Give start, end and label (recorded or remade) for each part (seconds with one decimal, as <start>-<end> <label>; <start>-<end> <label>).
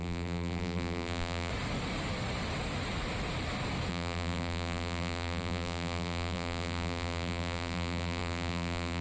0.0-1.5 remade; 1.5-3.9 recorded; 3.9-9.0 remade